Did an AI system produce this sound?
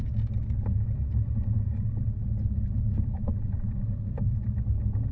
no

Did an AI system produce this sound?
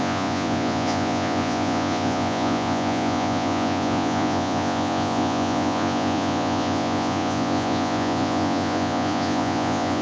yes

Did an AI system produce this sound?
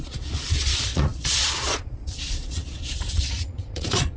yes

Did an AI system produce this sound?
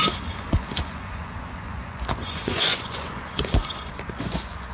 yes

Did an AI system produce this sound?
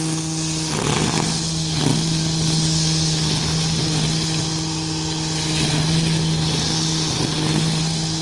no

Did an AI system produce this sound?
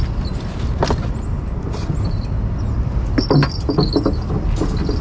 no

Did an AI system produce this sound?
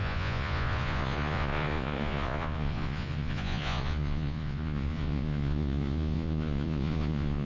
yes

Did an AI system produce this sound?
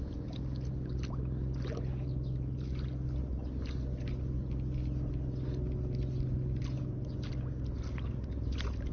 no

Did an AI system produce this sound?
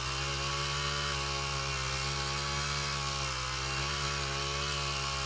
no